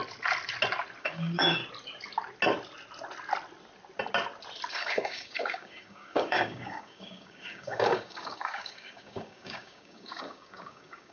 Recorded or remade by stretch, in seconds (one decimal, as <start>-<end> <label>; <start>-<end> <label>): 0.0-1.0 recorded; 1.0-1.6 remade; 1.6-4.7 recorded; 4.7-11.1 remade